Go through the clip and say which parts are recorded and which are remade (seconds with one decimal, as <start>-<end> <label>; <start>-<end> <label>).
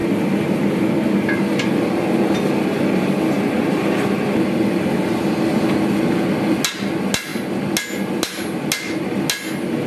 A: 0.0-9.9 recorded